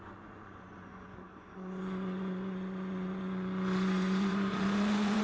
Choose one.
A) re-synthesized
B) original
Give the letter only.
A